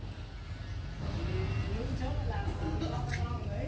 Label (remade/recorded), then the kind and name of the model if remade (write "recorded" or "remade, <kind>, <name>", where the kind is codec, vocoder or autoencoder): recorded